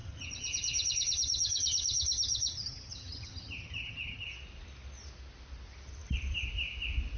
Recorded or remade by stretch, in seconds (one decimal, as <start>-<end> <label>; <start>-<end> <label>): 0.0-4.3 remade; 4.3-7.2 recorded

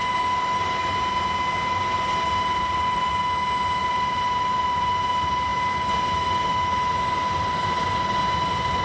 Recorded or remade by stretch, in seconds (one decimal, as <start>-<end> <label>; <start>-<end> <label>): 0.0-2.5 recorded; 2.5-3.1 remade; 3.1-3.8 recorded; 3.8-4.9 remade; 4.9-8.8 recorded

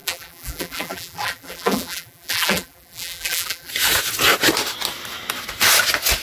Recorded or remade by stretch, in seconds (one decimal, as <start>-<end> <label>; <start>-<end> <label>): 0.0-3.7 remade; 3.7-6.2 recorded

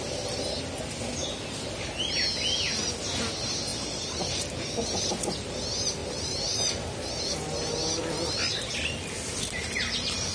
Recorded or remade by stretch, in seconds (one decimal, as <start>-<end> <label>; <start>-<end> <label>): 0.0-3.7 recorded; 3.7-4.4 remade; 4.4-6.0 recorded; 6.0-7.3 remade; 7.3-10.3 recorded